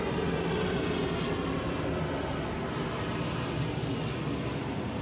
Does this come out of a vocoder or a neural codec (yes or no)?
no